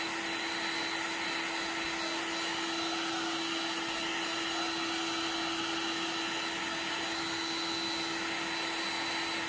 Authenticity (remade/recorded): recorded